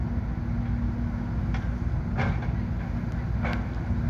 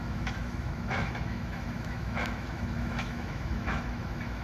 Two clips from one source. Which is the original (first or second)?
first